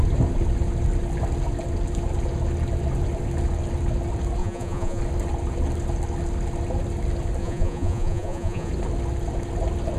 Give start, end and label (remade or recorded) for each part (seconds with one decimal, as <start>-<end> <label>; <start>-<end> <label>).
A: 0.0-4.4 recorded; 4.4-5.0 remade; 5.0-7.4 recorded; 7.4-8.7 remade; 8.7-10.0 recorded

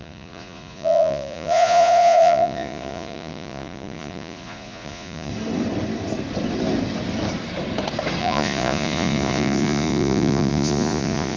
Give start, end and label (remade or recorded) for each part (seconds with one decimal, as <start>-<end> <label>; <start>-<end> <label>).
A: 0.0-5.3 remade; 5.3-8.2 recorded; 8.2-11.4 remade